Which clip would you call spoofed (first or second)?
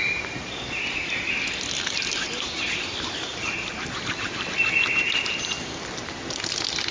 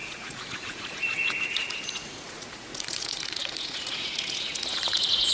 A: second